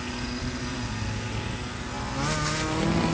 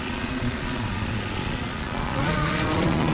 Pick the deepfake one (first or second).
second